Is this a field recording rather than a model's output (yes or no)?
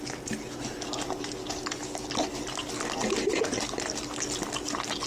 yes